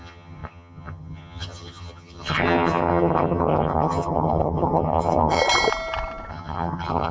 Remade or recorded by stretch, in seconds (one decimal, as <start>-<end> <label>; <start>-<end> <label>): 0.0-5.4 remade; 5.4-6.3 recorded; 6.3-7.1 remade